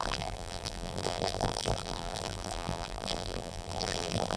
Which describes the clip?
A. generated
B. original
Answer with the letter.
A